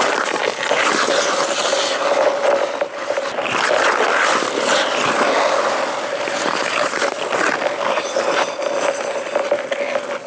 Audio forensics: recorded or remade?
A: recorded